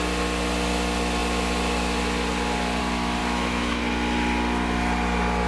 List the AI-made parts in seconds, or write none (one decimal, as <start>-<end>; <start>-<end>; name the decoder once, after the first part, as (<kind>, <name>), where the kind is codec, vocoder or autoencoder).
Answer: 3.2-3.8 (autoencoder, DAC-VAE)